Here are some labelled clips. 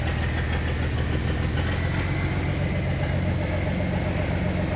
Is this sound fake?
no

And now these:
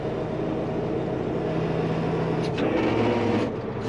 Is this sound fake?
no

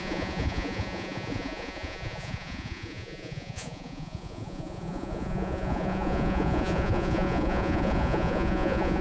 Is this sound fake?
yes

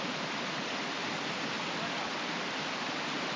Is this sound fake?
no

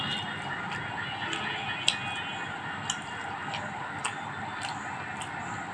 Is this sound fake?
no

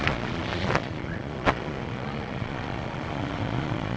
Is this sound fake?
yes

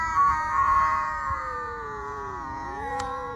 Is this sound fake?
yes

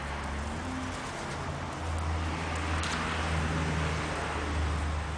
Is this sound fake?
no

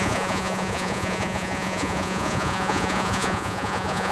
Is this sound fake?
yes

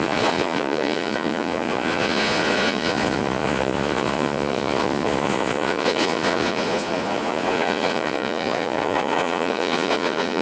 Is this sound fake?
yes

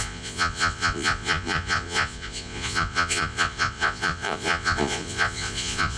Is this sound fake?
yes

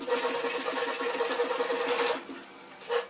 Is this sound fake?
no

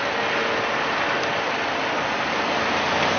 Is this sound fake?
no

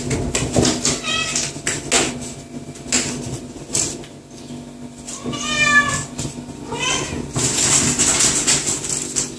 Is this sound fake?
no